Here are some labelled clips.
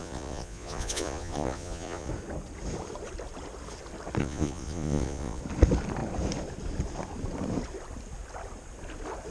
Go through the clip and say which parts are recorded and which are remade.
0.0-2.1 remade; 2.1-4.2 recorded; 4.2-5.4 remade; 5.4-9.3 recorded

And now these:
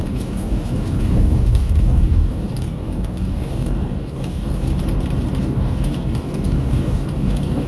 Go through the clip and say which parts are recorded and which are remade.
0.0-4.8 remade; 4.8-5.4 recorded; 5.4-7.7 remade

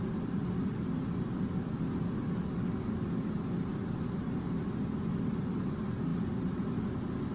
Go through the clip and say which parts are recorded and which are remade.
0.0-7.3 recorded

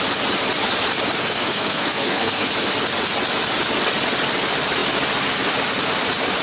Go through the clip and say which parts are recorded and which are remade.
0.0-1.2 recorded; 1.2-2.5 remade; 2.5-6.4 recorded

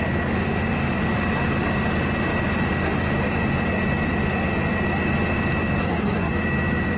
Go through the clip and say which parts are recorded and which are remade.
0.0-5.8 recorded; 5.8-6.3 remade; 6.3-7.0 recorded

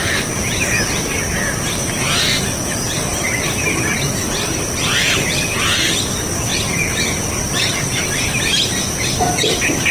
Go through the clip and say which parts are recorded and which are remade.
0.0-9.9 recorded

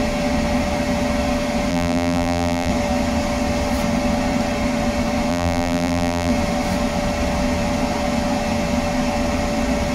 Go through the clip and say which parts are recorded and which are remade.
0.0-1.7 recorded; 1.7-2.7 remade; 2.7-5.3 recorded; 5.3-6.3 remade; 6.3-9.9 recorded